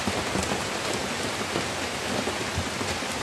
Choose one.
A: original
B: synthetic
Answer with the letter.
A